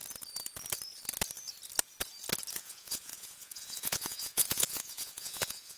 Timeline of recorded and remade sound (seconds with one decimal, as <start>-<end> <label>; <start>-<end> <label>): 0.0-2.6 recorded; 2.6-5.8 remade